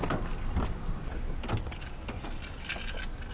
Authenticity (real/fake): real